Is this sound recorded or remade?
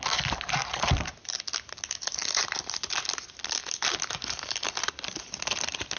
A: recorded